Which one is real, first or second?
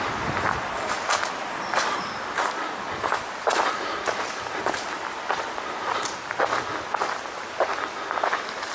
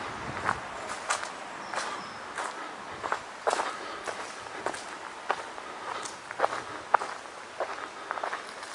second